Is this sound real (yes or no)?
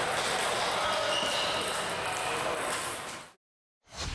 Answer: yes